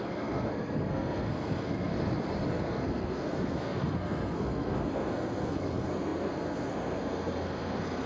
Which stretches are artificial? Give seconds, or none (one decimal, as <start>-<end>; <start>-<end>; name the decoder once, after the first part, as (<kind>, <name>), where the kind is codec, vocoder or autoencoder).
0.0-1.9 (codec, SNAC); 2.5-8.1